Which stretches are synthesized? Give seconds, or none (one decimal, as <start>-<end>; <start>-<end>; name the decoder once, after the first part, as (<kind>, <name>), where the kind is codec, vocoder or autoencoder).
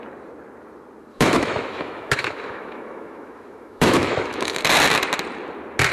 1.1-4.6 (autoencoder, DAC-VAE)